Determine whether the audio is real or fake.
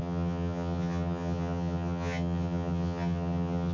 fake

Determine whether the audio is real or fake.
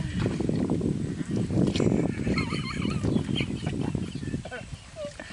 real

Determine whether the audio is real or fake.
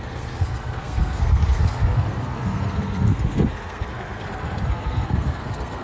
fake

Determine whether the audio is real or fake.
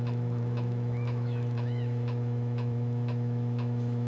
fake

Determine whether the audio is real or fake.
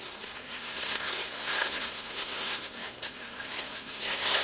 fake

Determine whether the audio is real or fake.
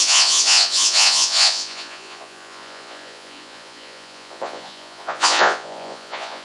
fake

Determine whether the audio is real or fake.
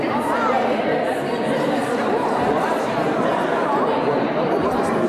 fake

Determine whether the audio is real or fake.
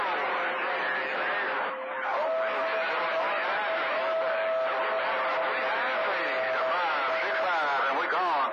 real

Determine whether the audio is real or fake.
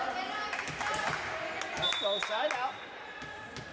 real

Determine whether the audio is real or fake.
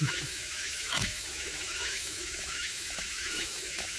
fake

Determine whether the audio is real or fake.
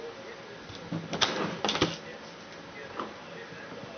real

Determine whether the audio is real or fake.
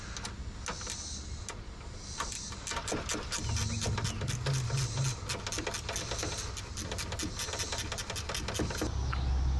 real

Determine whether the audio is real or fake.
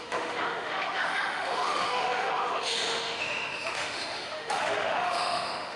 fake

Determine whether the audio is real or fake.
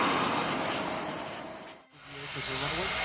real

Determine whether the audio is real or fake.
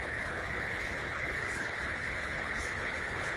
fake